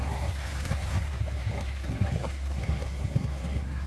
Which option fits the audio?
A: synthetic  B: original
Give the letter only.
A